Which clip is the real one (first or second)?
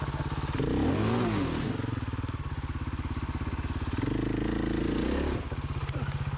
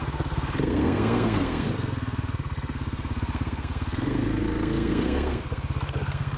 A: first